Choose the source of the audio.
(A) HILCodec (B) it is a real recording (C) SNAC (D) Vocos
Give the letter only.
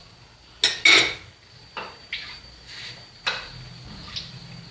B